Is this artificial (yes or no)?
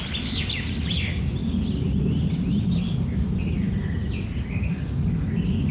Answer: no